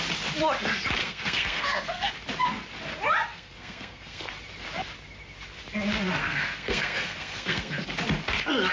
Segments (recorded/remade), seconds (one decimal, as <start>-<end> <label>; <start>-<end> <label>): 0.0-1.0 recorded; 1.0-2.1 remade; 2.1-3.3 recorded; 3.3-4.3 remade; 4.3-6.2 recorded; 6.2-7.8 remade; 7.8-8.7 recorded